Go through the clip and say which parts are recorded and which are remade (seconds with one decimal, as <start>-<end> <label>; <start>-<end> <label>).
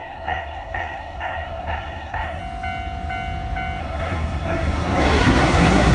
0.0-2.4 remade; 2.4-3.8 recorded; 3.8-5.9 remade